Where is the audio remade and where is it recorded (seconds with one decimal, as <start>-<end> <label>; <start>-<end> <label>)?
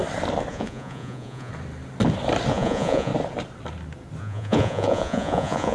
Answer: 0.0-0.5 recorded; 0.5-1.5 remade; 1.5-2.5 recorded; 2.5-3.1 remade; 3.1-4.2 recorded; 4.2-5.7 remade